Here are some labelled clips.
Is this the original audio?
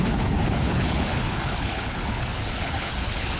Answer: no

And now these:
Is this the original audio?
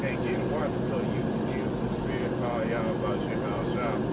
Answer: yes